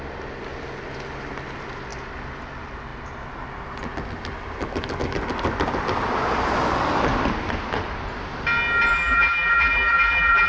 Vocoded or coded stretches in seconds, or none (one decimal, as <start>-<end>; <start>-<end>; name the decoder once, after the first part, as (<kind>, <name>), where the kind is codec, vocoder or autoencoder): 8.9-10.5 (vocoder, BigVGAN v2)